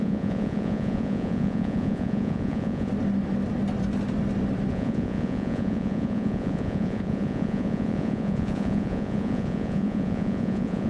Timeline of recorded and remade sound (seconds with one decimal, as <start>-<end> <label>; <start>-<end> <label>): 0.0-2.9 remade; 2.9-4.7 recorded; 4.7-10.9 remade